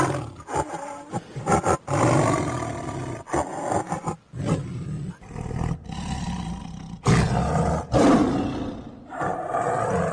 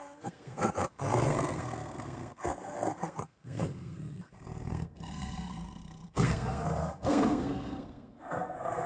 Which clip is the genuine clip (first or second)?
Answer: first